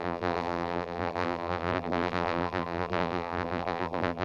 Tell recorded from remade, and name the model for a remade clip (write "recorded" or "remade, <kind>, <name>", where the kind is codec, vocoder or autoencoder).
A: remade, vocoder, BigVGAN v2